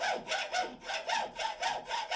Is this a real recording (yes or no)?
yes